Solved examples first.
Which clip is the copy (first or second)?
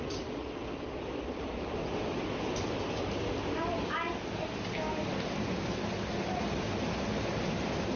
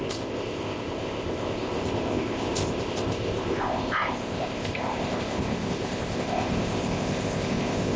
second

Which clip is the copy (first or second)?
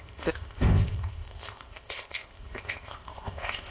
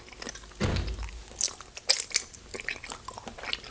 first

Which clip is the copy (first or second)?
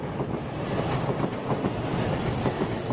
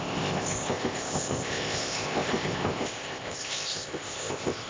second